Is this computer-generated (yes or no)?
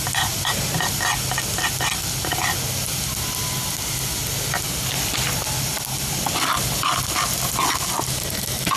no